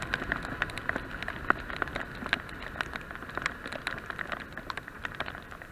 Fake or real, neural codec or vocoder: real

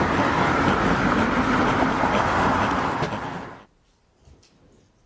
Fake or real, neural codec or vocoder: real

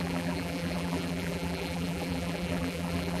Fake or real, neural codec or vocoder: fake, vocoder, BigVGAN v2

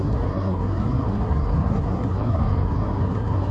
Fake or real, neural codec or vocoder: fake, codec, SNAC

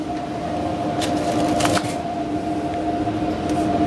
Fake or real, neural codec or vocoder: real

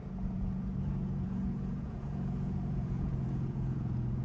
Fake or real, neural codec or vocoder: fake, vocoder, Vocos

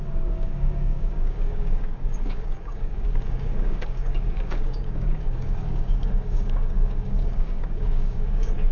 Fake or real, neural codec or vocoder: fake, codec, DAC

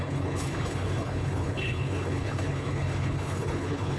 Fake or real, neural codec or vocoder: fake, codec, HILCodec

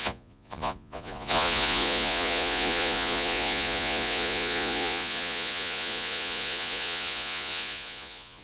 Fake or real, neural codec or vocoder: fake, vocoder, Vocos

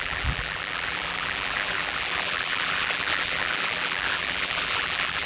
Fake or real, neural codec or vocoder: fake, vocoder, BigVGAN v2